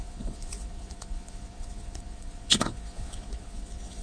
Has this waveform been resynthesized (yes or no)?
yes